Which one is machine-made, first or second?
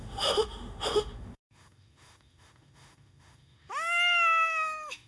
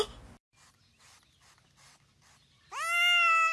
first